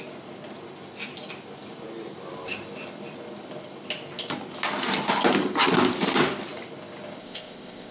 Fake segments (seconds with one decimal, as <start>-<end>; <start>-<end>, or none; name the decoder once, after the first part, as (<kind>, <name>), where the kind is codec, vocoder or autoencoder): 7.2-7.9 (codec, ZipCodec)